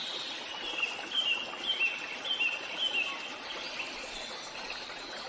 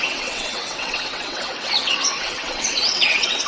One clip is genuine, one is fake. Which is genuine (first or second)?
first